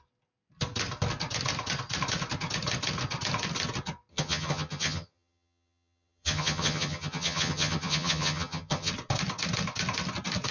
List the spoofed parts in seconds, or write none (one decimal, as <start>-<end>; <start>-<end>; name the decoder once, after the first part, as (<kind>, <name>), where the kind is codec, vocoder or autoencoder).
4.1-8.9 (vocoder, HiFi-GAN)